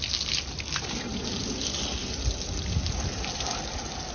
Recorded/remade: recorded